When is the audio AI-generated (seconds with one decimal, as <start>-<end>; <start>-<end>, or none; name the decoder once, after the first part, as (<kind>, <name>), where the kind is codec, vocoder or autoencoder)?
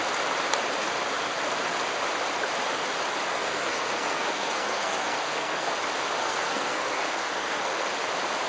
3.3-5.7 (codec, SNAC); 6.2-7.9